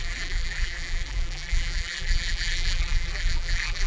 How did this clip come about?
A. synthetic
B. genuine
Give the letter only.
A